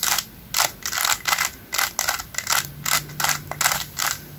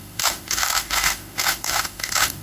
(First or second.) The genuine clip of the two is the first